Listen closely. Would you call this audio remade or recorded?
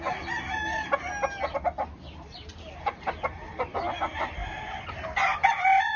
recorded